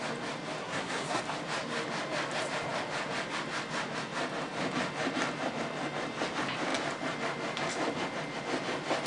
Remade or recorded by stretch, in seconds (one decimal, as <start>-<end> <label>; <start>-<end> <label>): 0.0-0.6 recorded; 0.6-1.2 remade; 1.2-9.1 recorded

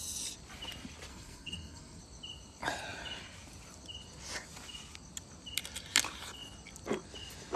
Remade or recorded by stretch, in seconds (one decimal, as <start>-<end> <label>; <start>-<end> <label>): 0.0-1.1 recorded; 1.1-2.0 remade; 2.0-7.6 recorded

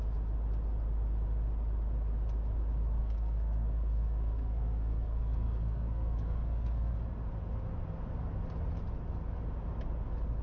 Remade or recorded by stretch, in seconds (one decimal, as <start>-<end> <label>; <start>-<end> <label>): 0.0-3.0 recorded; 3.0-6.9 remade; 6.9-10.4 recorded

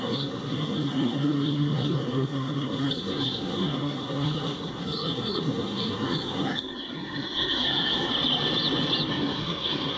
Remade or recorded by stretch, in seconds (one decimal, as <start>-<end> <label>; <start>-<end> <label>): 0.0-8.1 remade; 8.1-9.1 recorded; 9.1-10.0 remade

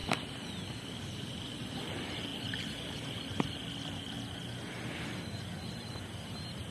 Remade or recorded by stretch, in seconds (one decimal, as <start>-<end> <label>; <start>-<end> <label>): 0.0-6.7 recorded

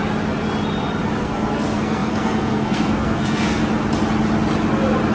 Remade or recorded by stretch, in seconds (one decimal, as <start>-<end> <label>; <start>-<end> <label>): 0.0-1.2 recorded; 1.2-3.6 remade; 3.6-5.1 recorded

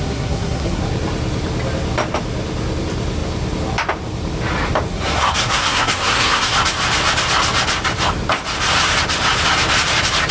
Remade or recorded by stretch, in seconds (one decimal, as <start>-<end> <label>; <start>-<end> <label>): 0.0-0.8 remade; 0.8-4.9 recorded; 4.9-6.5 remade; 6.5-10.3 recorded